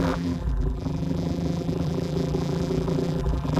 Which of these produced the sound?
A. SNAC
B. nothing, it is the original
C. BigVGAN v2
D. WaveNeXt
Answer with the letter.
C